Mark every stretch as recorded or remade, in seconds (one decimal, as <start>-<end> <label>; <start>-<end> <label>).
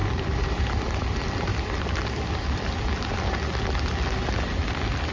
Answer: 0.0-0.6 remade; 0.6-1.5 recorded; 1.5-3.1 remade; 3.1-5.1 recorded